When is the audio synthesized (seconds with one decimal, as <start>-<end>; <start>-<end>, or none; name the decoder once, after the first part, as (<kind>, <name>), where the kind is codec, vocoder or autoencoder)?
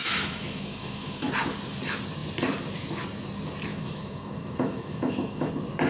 0.0-1.3 (autoencoder, DAC-VAE); 3.7-5.5